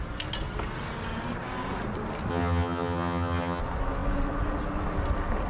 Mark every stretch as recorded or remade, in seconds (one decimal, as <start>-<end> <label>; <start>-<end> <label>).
0.0-2.3 recorded; 2.3-3.6 remade; 3.6-5.5 recorded